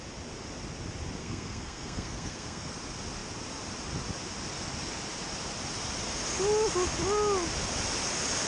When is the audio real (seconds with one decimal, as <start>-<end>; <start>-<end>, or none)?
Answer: 0.0-1.2; 2.7-8.5